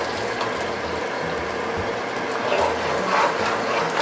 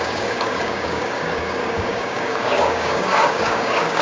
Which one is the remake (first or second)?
second